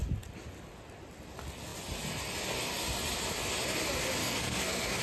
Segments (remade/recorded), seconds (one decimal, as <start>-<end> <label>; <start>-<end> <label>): 0.0-4.2 recorded; 4.2-5.0 remade